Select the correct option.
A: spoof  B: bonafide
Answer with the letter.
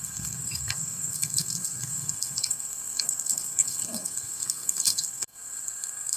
A